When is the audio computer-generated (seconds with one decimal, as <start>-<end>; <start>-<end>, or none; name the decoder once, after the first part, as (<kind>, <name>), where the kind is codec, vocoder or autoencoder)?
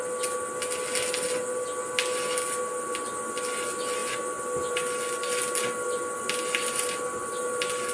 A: none